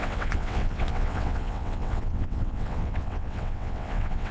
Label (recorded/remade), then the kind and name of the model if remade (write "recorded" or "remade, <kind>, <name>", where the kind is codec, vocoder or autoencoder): remade, vocoder, WaveNeXt